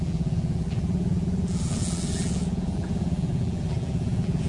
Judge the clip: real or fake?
fake